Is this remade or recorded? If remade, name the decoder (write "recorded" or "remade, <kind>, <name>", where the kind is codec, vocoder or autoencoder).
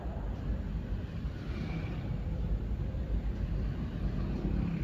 recorded